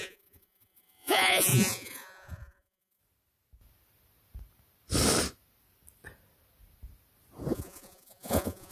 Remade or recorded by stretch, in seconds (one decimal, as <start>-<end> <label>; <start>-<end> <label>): 0.0-3.0 remade; 3.0-7.5 recorded; 7.5-8.7 remade